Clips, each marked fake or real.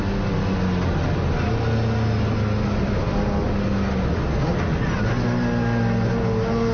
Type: real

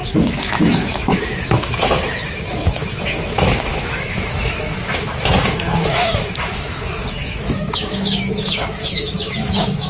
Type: fake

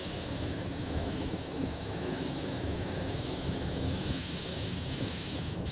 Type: fake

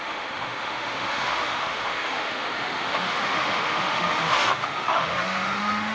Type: fake